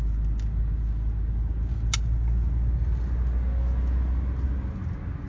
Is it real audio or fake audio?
real